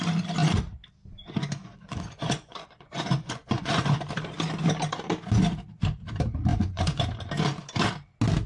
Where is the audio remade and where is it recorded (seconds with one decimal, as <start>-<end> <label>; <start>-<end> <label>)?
0.0-1.6 recorded; 1.6-4.0 remade; 4.0-6.5 recorded; 6.5-7.0 remade; 7.0-8.5 recorded